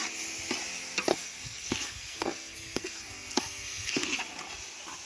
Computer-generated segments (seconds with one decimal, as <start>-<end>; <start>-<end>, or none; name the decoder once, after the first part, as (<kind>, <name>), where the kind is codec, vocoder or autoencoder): 1.1-4.2 (codec, SNAC)